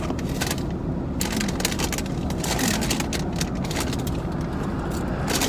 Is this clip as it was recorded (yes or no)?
yes